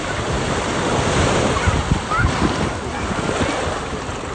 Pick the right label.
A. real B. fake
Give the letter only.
A